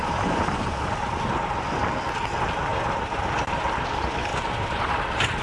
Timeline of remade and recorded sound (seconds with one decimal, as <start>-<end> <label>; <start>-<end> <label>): 0.0-0.7 remade; 0.7-4.3 recorded; 4.3-5.0 remade; 5.0-5.4 recorded